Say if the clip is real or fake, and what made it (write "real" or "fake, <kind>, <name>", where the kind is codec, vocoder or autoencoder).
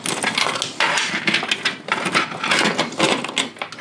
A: real